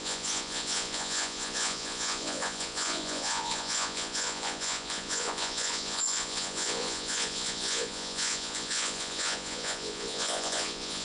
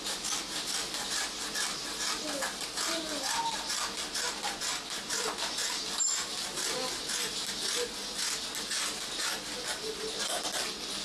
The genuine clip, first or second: second